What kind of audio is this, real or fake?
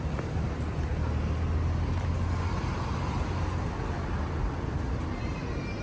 real